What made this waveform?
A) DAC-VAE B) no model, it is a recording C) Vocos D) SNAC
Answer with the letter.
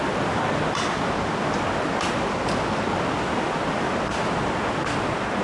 B